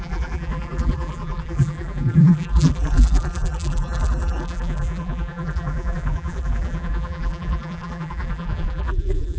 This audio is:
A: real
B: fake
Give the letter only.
B